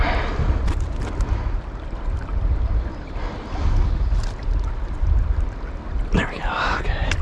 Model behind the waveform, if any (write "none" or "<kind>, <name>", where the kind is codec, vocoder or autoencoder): none